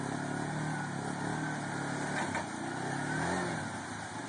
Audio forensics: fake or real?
real